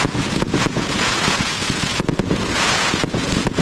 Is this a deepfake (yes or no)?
yes